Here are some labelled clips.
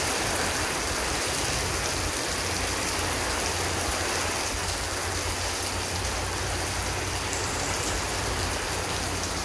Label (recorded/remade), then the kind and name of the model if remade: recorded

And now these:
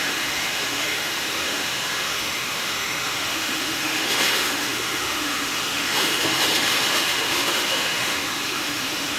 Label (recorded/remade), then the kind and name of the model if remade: remade, autoencoder, DAC-VAE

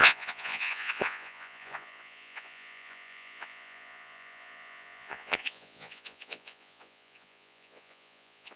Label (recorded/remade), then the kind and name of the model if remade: remade, vocoder, Vocos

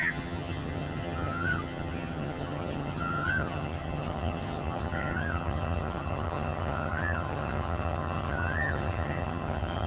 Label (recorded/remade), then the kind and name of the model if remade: remade, vocoder, HiFi-GAN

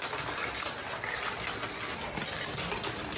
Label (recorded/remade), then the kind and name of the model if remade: recorded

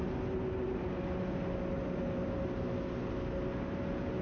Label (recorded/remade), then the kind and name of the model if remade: recorded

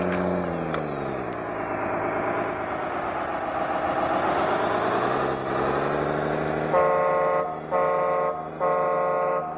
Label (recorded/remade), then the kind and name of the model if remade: recorded